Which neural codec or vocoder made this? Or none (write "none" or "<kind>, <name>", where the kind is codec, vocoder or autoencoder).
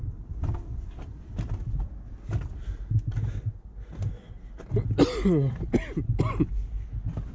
none